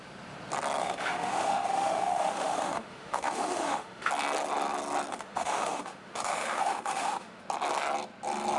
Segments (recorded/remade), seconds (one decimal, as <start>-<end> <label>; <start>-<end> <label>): 0.0-0.8 recorded; 0.8-4.1 remade; 4.1-5.1 recorded; 5.1-7.4 remade; 7.4-8.6 recorded